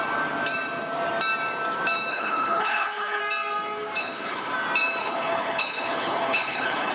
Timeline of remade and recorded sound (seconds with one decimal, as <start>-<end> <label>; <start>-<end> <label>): 0.0-2.1 recorded; 2.1-3.2 remade; 3.2-4.0 recorded; 4.0-4.5 remade; 4.5-5.0 recorded; 5.0-6.9 remade